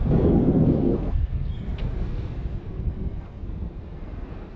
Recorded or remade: remade